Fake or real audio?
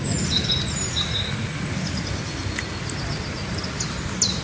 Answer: real